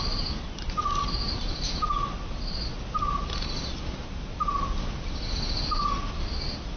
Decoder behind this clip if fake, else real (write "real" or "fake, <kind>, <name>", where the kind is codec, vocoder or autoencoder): real